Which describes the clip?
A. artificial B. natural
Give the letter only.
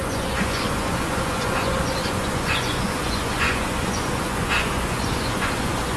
A